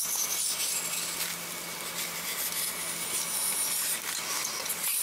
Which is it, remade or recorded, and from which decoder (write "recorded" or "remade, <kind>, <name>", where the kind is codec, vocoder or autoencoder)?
recorded